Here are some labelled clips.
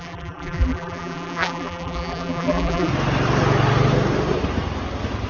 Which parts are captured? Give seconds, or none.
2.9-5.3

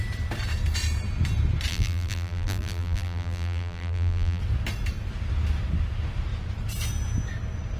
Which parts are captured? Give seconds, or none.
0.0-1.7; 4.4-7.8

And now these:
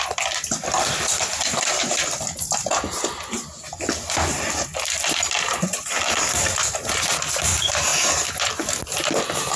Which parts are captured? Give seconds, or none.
0.0-9.6

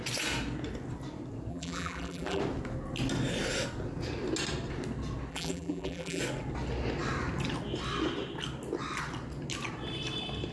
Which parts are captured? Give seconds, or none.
0.0-1.5; 2.4-5.3; 6.2-10.5

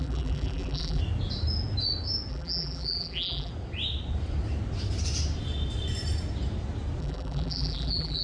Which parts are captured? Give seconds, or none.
1.0-2.3; 3.5-7.0

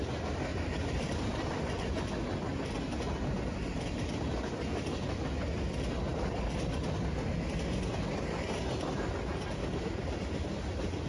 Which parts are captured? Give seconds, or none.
0.0-0.5; 1.8-11.1